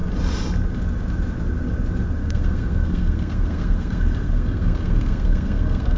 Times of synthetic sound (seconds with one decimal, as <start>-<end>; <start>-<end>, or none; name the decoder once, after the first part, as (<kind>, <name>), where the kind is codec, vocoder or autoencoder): 2.2-6.0 (codec, SNAC)